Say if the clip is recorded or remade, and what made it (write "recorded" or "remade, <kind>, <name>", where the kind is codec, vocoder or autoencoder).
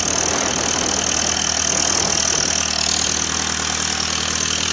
recorded